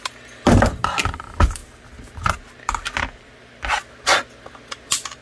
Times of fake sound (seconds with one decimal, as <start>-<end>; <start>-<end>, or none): none